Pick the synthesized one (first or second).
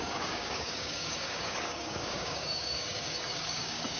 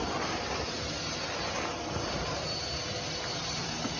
first